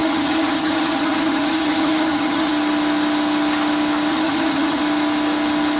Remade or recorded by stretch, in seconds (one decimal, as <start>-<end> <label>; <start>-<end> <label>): 0.0-2.5 remade; 2.5-4.1 recorded; 4.1-4.8 remade; 4.8-5.8 recorded

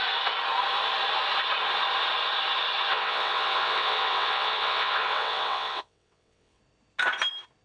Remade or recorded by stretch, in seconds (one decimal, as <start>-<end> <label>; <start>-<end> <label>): 0.0-2.9 recorded; 2.9-6.6 remade; 6.6-7.6 recorded

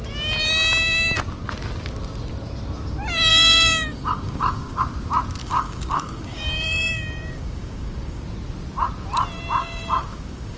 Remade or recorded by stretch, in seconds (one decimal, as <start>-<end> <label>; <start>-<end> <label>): 0.0-3.3 recorded; 3.3-4.8 remade; 4.8-5.4 recorded; 5.4-8.2 remade; 8.2-9.6 recorded; 9.6-10.6 remade

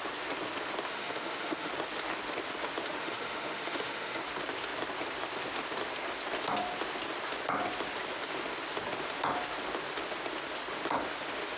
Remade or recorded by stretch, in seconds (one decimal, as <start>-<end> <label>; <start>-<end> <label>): 0.0-0.9 recorded; 0.9-1.7 remade; 1.7-3.0 recorded; 3.0-4.2 remade; 4.2-11.6 recorded

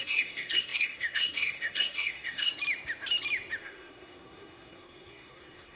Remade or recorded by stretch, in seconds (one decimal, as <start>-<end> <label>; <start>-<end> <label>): 0.0-2.5 remade; 2.5-3.6 recorded; 3.6-5.8 remade

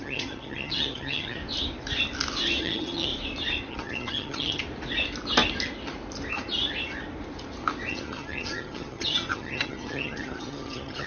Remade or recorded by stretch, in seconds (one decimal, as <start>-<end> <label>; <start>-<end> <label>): 0.0-1.4 remade; 1.4-2.6 recorded; 2.6-3.1 remade; 3.1-3.7 recorded; 3.7-4.6 remade; 4.6-7.9 recorded; 7.9-11.1 remade

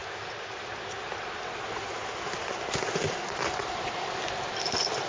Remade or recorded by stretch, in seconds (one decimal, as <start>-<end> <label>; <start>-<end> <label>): 0.0-0.7 remade; 0.7-5.1 recorded